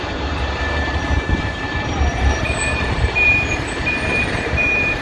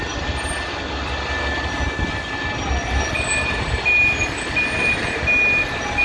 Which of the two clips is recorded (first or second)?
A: second